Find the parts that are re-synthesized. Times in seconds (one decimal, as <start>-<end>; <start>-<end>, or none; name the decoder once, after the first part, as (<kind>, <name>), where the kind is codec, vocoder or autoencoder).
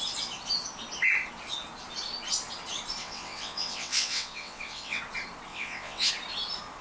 3.0-5.0 (vocoder, WaveNeXt); 5.5-6.1